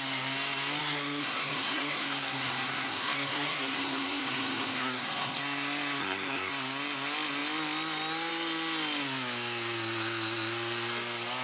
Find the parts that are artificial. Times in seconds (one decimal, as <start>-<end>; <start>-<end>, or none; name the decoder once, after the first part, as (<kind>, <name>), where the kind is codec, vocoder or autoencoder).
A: 0.8-5.4 (codec, SNAC); 6.0-6.5